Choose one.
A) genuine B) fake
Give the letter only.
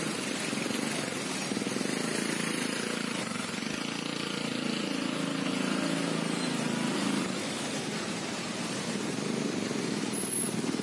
B